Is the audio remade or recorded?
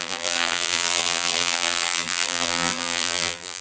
remade